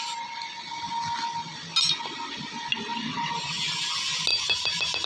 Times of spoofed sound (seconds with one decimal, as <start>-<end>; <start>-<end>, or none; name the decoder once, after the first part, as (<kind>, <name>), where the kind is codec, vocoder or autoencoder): 2.9-3.5 (vocoder, BigVGAN v2); 4.3-5.1